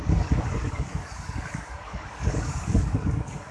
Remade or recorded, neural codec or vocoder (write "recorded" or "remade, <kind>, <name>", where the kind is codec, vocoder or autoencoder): remade, codec, DAC